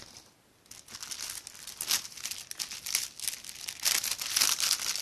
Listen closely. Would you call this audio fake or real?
real